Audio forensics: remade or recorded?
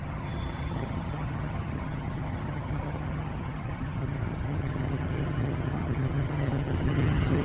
remade